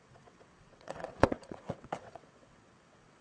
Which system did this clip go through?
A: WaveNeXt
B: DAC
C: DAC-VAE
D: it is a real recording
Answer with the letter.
A